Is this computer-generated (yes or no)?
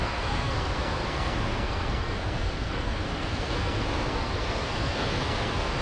yes